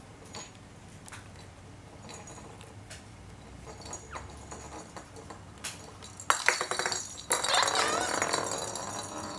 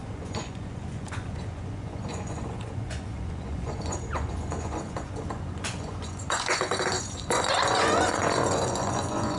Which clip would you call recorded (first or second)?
first